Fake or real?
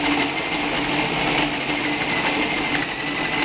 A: real